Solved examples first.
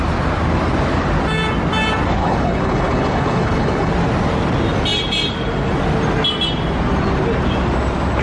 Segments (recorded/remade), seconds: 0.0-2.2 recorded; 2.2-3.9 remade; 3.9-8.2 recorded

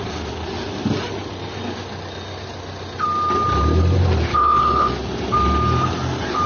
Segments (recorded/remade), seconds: 0.0-4.3 recorded; 4.3-4.9 remade; 4.9-6.5 recorded